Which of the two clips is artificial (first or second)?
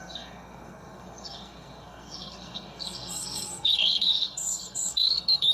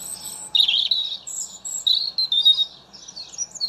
first